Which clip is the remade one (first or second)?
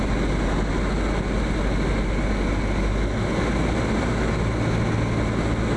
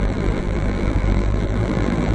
second